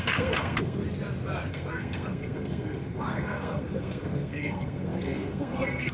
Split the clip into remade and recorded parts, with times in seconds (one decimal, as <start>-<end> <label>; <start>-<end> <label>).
0.0-0.8 remade; 0.8-1.5 recorded; 1.5-5.9 remade